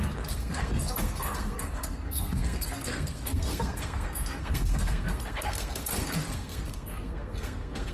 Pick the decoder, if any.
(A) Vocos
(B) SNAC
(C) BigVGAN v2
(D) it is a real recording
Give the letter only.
B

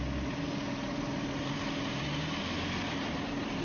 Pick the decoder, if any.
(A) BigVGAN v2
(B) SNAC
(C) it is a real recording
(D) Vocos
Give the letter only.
C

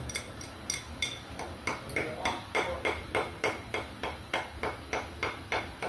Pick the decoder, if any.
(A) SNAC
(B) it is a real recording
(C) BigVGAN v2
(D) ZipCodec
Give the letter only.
B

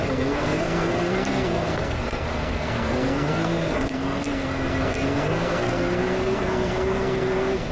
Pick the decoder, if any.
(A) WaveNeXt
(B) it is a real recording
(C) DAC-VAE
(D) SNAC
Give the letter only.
D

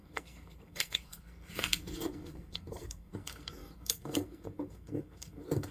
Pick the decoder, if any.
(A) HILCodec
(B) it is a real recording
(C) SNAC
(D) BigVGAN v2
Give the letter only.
C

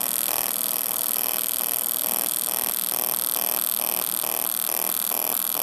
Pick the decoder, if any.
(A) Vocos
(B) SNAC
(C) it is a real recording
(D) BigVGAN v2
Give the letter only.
C